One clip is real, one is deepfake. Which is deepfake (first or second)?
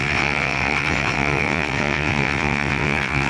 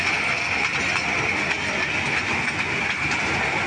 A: first